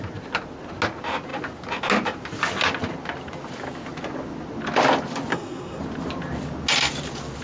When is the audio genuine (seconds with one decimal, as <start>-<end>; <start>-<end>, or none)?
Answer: 0.0-5.3; 5.8-7.4